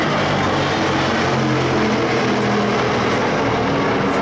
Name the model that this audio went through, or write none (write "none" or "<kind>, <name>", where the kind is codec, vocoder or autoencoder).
none